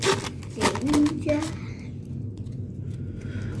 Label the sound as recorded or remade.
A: recorded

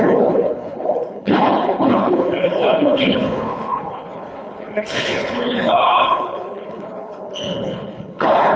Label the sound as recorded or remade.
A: remade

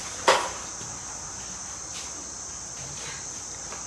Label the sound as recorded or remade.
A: recorded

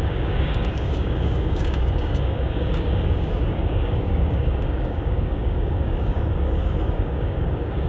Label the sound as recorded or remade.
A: remade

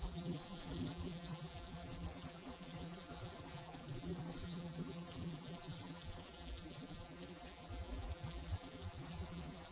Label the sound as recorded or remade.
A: remade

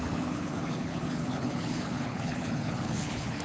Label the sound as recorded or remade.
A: remade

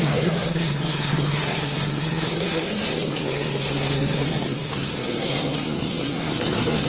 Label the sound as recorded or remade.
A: remade